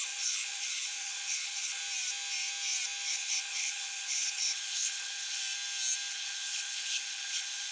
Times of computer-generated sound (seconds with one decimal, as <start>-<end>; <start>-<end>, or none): 0.0-1.8; 3.1-5.4; 6.1-7.7